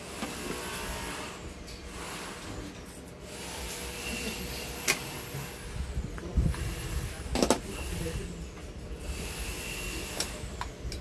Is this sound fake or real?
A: real